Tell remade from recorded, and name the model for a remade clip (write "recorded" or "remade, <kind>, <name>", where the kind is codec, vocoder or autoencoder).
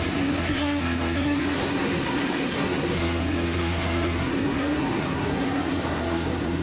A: remade, codec, SNAC